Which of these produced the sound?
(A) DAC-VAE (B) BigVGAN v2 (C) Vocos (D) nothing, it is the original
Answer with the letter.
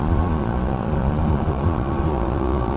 C